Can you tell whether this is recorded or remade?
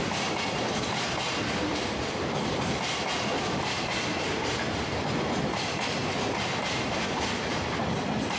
remade